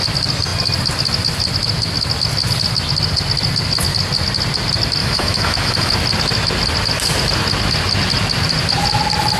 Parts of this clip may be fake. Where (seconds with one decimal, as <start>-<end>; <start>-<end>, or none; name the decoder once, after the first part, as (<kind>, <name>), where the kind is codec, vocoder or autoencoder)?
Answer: 5.0-5.9 (autoencoder, DAC-VAE)